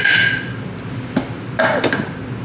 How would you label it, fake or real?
fake